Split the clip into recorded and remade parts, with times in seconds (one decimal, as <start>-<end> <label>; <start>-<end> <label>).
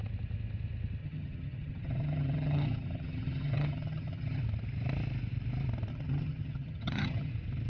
0.0-1.0 recorded; 1.0-4.4 remade; 4.4-5.9 recorded; 5.9-7.3 remade; 7.3-7.7 recorded